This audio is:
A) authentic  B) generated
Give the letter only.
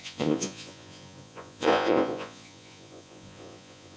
B